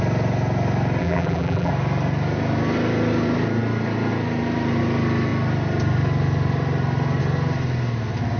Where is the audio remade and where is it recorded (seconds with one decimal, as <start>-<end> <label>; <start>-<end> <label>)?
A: 0.0-1.0 recorded; 1.0-1.7 remade; 1.7-8.4 recorded